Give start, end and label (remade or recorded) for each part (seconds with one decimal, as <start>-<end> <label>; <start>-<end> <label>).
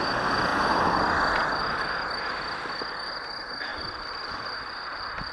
0.0-5.3 recorded